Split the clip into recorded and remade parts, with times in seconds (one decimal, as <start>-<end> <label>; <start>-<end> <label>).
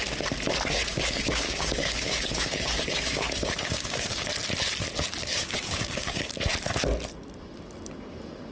0.0-0.9 recorded; 0.9-4.3 remade; 4.3-5.2 recorded; 5.2-6.3 remade; 6.3-8.5 recorded